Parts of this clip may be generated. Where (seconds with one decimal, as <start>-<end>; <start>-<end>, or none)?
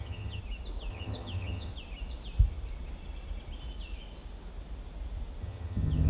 0.0-0.4; 0.9-1.7; 5.4-6.1